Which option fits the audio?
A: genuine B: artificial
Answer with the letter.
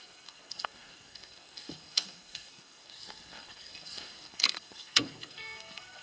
B